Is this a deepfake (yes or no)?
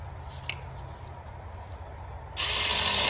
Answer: no